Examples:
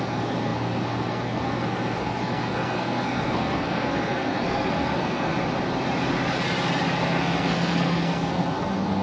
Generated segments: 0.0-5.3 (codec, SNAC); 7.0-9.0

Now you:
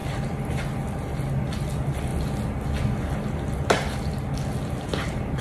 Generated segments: 0.0-0.6 (vocoder, BigVGAN v2)

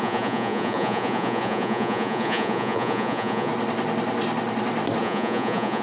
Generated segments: 0.0-3.5 (vocoder, Vocos); 5.0-5.8

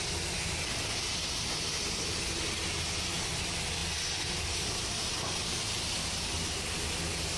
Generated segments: none